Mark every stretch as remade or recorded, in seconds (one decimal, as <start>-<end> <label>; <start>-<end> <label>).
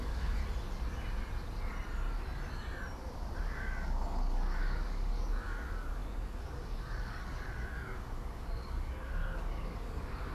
0.0-0.4 remade; 0.4-3.6 recorded; 3.6-10.3 remade